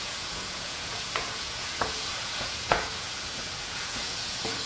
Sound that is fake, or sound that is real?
fake